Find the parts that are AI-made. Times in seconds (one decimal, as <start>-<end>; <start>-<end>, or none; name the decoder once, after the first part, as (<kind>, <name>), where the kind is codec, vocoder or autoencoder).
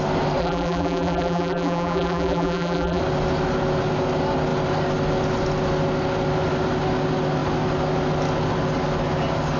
0.4-3.0 (vocoder, BigVGAN v2)